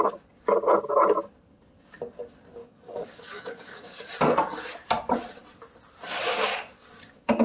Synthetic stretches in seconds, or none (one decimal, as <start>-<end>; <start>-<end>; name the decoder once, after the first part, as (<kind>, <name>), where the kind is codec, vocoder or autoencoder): 2.6-4.1 (codec, DAC)